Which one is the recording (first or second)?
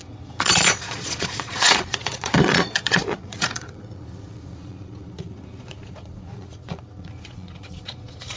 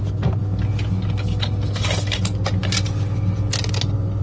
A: second